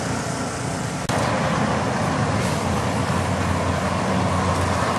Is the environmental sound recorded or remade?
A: recorded